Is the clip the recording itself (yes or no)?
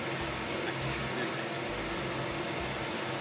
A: yes